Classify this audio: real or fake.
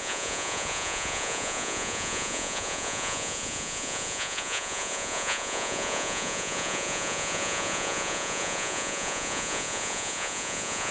fake